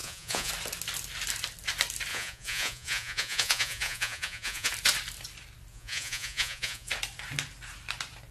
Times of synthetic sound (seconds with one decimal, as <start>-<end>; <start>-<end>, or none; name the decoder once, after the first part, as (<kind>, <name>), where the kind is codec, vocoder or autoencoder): 0.0-0.5 (vocoder, Vocos); 2.1-4.7; 5.7-6.9